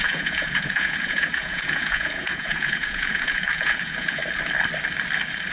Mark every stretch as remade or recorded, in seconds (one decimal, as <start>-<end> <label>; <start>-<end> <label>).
0.0-4.2 remade; 4.2-5.5 recorded